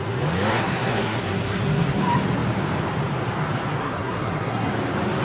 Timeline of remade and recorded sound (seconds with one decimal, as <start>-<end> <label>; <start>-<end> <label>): 0.0-0.5 recorded; 0.5-2.0 remade; 2.0-3.8 recorded; 3.8-4.7 remade; 4.7-5.2 recorded